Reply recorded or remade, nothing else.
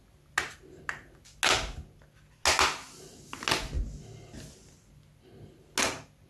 recorded